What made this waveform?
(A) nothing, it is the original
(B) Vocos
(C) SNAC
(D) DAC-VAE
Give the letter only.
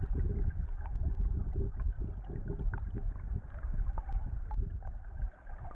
A